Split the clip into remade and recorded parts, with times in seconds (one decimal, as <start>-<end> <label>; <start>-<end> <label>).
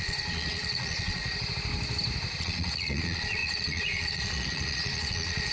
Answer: 0.0-1.2 remade; 1.2-2.4 recorded; 2.4-5.5 remade